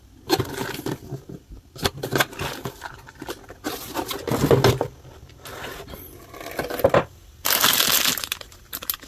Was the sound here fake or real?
real